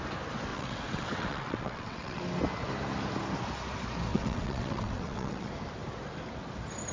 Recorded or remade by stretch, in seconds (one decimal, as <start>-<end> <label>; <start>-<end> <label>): 0.0-0.5 recorded; 0.5-2.2 remade; 2.2-4.1 recorded; 4.1-5.5 remade; 5.5-6.9 recorded